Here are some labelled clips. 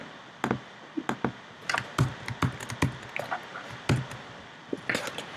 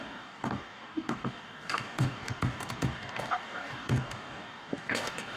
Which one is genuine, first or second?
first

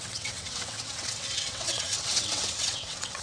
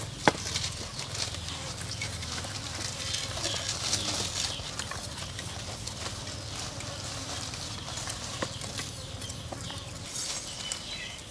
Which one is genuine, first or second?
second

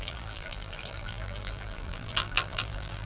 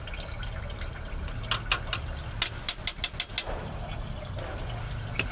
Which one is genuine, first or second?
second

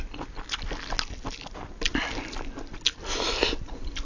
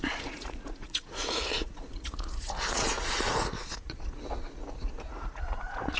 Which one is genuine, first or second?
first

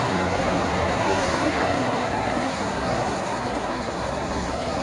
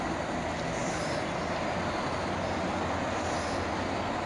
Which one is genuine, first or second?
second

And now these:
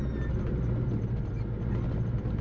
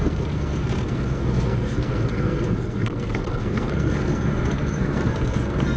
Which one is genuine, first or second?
first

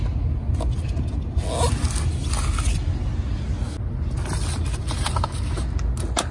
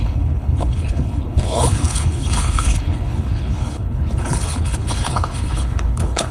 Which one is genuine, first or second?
first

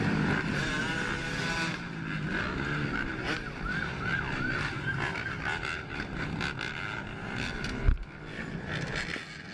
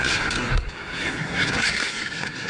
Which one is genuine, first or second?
first